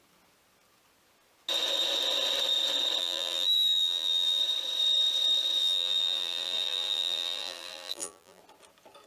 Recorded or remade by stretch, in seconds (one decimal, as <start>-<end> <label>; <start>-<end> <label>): 0.0-3.0 recorded; 3.0-4.4 remade; 4.4-5.6 recorded; 5.6-8.4 remade; 8.4-9.1 recorded